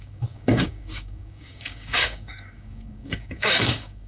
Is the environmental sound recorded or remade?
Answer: remade